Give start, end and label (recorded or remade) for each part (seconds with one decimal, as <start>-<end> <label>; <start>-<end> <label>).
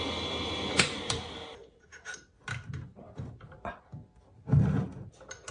0.0-5.5 recorded